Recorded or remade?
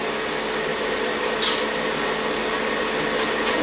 recorded